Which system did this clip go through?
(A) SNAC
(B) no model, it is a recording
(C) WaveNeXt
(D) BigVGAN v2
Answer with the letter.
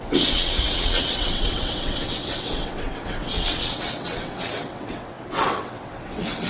C